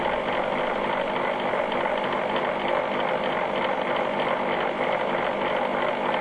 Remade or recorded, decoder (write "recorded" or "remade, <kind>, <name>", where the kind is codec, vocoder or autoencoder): recorded